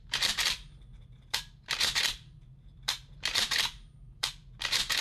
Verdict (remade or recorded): remade